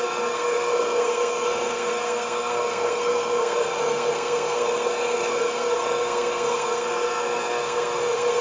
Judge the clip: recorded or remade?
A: remade